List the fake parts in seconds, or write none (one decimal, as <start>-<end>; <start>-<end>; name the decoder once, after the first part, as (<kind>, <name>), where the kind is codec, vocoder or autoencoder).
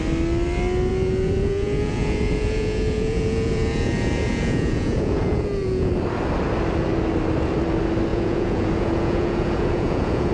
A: 0.9-5.9 (vocoder, Vocos); 8.1-10.3